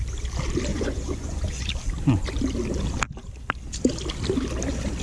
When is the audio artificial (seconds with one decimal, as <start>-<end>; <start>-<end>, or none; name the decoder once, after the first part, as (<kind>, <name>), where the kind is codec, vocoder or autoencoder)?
0.7-1.7 (vocoder, Vocos)